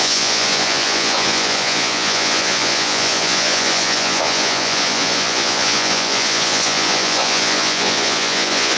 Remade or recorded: remade